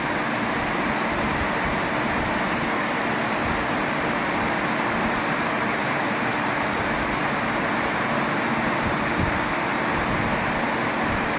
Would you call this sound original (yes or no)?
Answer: yes